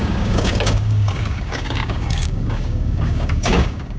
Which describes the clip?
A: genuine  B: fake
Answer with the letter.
B